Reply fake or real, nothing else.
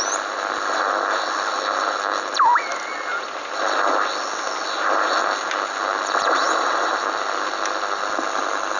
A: real